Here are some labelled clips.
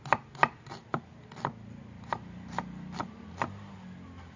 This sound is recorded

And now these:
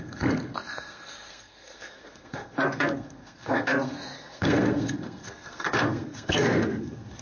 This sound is remade